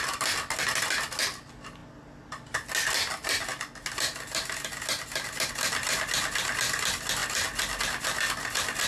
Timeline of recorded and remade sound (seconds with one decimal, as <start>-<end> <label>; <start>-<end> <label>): 0.0-8.9 recorded